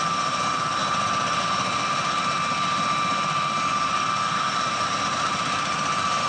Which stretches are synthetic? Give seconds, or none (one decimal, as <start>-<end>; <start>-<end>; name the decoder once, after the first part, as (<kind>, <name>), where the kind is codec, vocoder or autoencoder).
0.0-0.8 (vocoder, BigVGAN v2); 4.6-6.3